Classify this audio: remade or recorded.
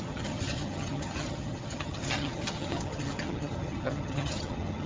remade